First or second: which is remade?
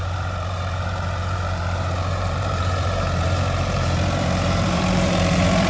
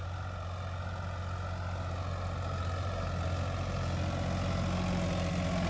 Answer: first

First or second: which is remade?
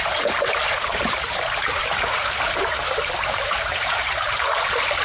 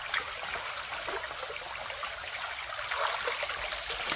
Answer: first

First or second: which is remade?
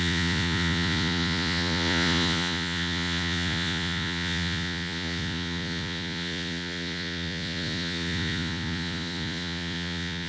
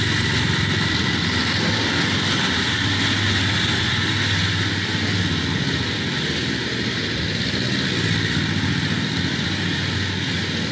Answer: first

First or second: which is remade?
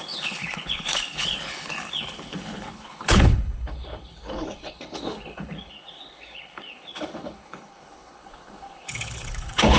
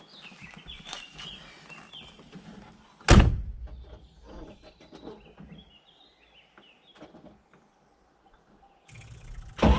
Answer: first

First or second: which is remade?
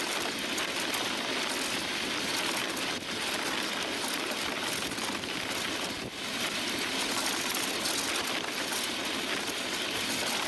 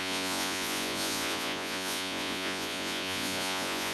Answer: second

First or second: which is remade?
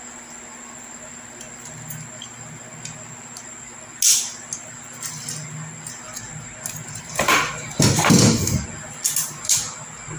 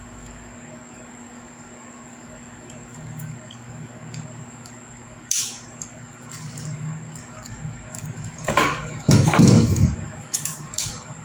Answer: second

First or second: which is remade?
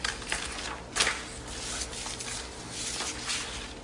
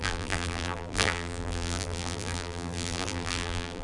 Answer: second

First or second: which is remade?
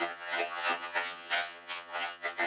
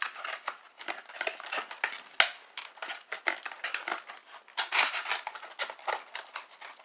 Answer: first